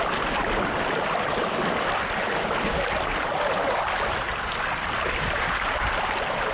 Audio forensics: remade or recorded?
recorded